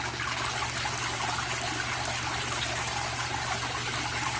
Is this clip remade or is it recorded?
recorded